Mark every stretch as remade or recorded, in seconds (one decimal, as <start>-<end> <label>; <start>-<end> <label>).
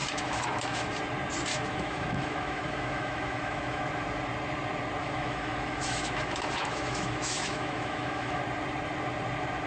0.0-0.9 remade; 0.9-1.5 recorded; 1.5-3.8 remade; 3.8-5.0 recorded; 5.0-8.4 remade; 8.4-9.7 recorded